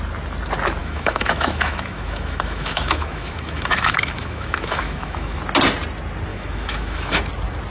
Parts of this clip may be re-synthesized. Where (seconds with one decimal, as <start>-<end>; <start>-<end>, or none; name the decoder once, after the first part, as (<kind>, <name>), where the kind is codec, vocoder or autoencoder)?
0.8-5.4 (autoencoder, DAC-VAE); 6.3-7.2